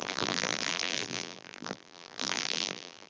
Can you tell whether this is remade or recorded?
remade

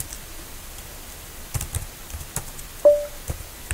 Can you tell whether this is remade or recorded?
recorded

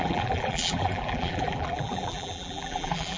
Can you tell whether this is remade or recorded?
remade